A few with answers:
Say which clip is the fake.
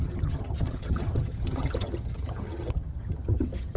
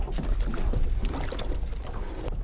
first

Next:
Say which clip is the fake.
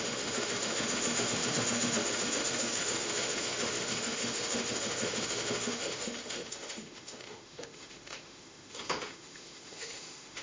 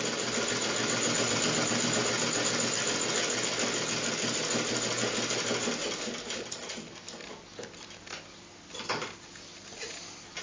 first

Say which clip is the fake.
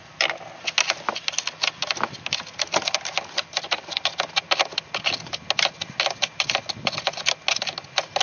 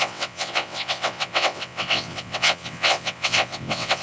second